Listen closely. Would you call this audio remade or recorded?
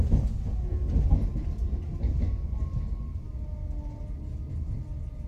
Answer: recorded